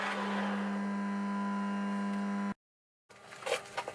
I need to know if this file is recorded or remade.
recorded